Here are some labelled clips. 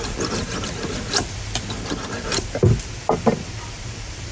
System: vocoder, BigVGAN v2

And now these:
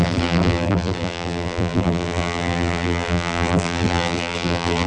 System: vocoder, BigVGAN v2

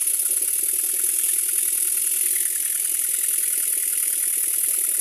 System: none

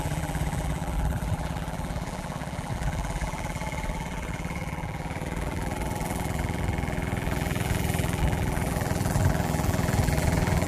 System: vocoder, BigVGAN v2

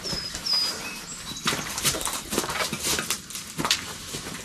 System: vocoder, BigVGAN v2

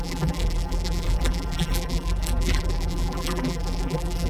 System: vocoder, BigVGAN v2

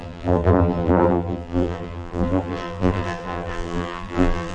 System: vocoder, BigVGAN v2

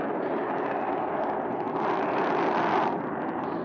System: none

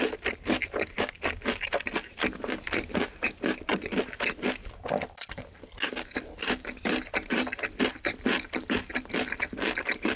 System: none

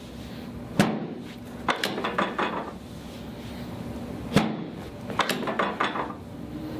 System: none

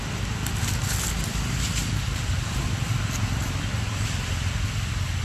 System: vocoder, BigVGAN v2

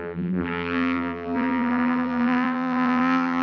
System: vocoder, BigVGAN v2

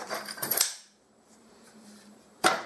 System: vocoder, BigVGAN v2